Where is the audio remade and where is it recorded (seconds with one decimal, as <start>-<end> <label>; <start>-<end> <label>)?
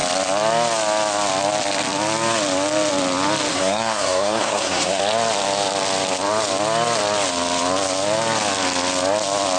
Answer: 0.0-3.5 recorded; 3.5-5.0 remade; 5.0-9.6 recorded